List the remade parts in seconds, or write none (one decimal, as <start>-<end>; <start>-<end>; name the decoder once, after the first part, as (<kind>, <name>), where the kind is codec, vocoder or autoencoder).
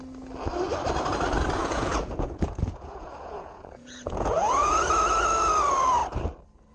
1.6-4.8 (vocoder, Vocos)